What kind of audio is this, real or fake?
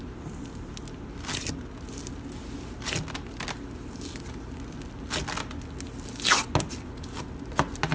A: real